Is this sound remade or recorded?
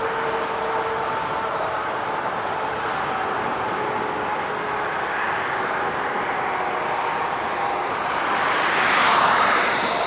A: recorded